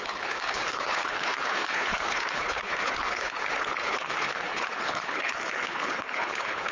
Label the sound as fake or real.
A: fake